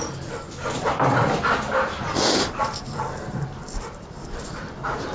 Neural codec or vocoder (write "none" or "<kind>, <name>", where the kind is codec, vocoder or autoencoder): vocoder, BigVGAN v2